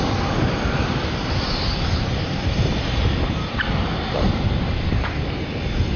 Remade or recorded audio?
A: recorded